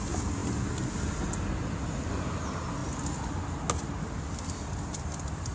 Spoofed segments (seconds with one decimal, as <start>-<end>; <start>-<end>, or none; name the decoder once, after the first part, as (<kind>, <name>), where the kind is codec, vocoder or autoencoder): none